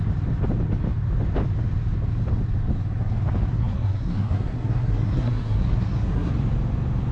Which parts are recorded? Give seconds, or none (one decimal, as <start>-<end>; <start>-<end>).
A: 0.0-3.5; 6.3-7.1